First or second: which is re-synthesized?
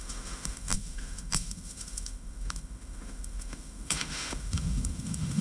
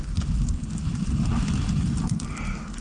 first